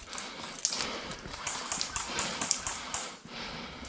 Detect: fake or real real